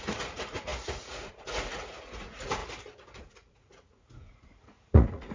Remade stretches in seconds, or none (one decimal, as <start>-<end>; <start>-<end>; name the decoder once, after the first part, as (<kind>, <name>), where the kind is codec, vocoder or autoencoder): 0.0-2.6 (vocoder, Vocos); 3.2-5.3